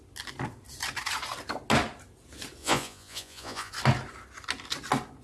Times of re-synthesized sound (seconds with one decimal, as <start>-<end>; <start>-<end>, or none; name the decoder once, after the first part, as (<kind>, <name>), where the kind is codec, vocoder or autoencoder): 2.6-3.7 (vocoder, Vocos)